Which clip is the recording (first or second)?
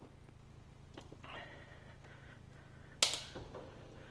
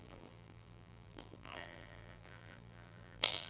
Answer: first